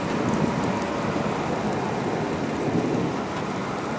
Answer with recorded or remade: recorded